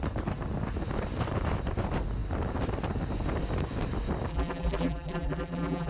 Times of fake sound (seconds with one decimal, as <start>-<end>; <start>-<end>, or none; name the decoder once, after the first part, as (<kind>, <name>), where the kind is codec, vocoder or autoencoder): 4.3-5.9 (vocoder, BigVGAN v2)